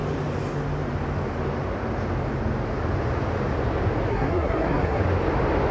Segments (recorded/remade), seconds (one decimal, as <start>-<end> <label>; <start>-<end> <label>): 0.0-4.1 recorded; 4.1-5.0 remade; 5.0-5.7 recorded